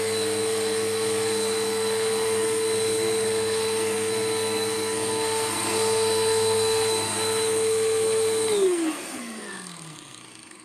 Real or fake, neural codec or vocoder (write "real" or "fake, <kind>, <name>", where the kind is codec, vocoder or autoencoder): fake, codec, SNAC